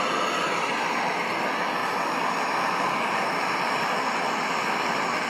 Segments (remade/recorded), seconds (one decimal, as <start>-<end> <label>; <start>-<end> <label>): 0.0-5.3 recorded